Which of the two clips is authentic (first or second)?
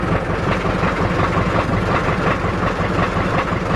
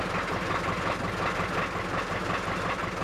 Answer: second